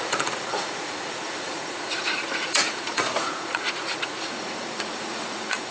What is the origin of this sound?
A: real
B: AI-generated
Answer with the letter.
B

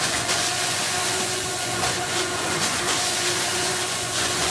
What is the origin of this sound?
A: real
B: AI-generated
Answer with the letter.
B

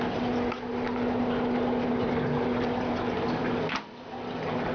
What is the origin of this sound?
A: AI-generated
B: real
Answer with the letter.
B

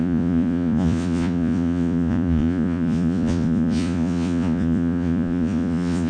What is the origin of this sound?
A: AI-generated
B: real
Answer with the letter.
A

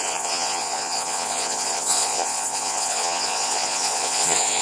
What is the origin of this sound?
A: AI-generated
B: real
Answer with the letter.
A